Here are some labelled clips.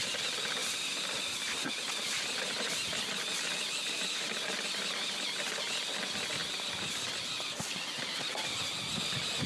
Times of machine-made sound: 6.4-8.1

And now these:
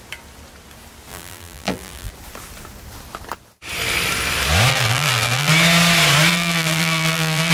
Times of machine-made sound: 1.1-2.1; 4.7-5.5; 6.3-7.5

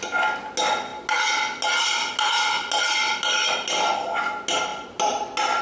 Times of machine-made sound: none

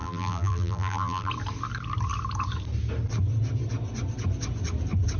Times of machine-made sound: 0.0-1.3